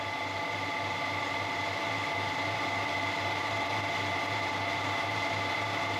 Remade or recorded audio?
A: remade